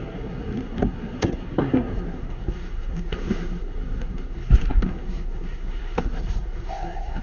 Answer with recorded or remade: remade